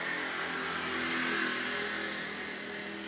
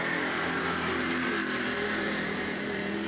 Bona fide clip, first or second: first